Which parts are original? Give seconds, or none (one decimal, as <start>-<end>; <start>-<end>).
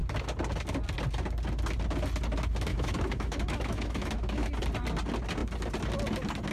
0.0-2.7; 4.5-6.5